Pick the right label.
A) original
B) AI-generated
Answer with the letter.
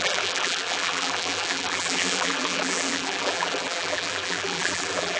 B